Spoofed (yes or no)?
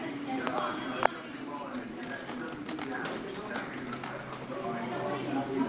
no